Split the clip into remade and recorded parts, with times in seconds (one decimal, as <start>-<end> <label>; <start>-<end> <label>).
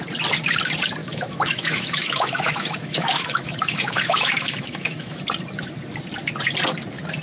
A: 0.0-1.0 recorded; 1.0-5.2 remade; 5.2-7.2 recorded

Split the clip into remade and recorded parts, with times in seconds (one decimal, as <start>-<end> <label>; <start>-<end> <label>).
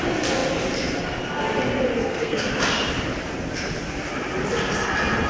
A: 0.0-1.9 recorded; 1.9-2.5 remade; 2.5-5.3 recorded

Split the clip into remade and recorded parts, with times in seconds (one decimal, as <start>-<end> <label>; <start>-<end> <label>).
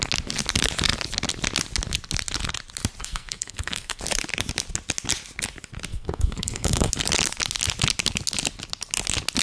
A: 0.0-3.0 recorded; 3.0-4.0 remade; 4.0-5.9 recorded; 5.9-6.9 remade; 6.9-9.4 recorded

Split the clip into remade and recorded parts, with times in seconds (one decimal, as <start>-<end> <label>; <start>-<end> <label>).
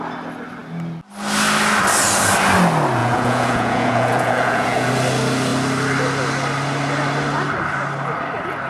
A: 0.0-3.0 recorded; 3.0-4.9 remade; 4.9-8.7 recorded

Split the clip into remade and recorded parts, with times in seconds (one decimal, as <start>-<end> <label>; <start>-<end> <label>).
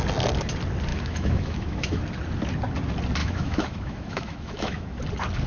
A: 0.0-0.9 recorded; 0.9-2.0 remade; 2.0-3.2 recorded; 3.2-5.0 remade; 5.0-5.5 recorded